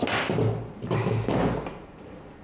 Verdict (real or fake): real